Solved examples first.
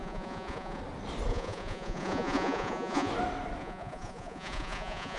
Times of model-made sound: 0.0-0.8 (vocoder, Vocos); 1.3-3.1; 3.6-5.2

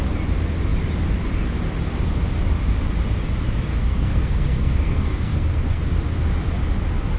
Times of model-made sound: 3.7-5.8 (codec, SNAC)

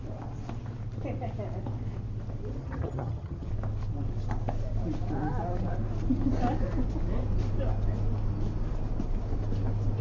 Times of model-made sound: 2.6-3.5 (vocoder, HiFi-GAN)

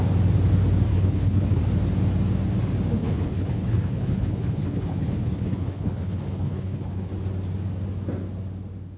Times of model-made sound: 0.9-1.6 (codec, HILCodec); 3.0-7.1